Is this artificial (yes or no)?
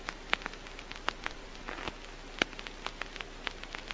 no